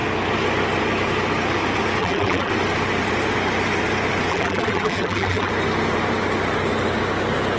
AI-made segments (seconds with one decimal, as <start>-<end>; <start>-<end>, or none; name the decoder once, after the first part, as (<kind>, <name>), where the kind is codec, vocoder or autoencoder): 2.0-2.5 (vocoder, BigVGAN v2); 4.3-5.5